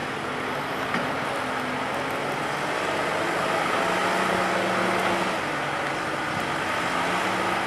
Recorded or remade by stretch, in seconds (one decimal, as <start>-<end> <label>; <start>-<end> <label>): 0.0-7.7 recorded